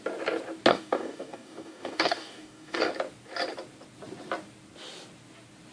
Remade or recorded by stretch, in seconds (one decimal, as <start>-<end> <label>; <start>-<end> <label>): 0.0-0.7 recorded; 0.7-2.9 remade; 2.9-5.7 recorded